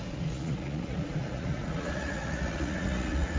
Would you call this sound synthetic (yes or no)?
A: yes